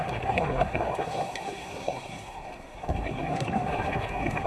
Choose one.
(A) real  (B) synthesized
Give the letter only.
B